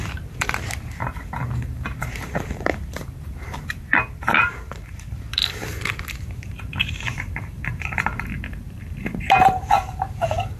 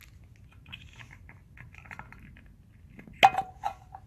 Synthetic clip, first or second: first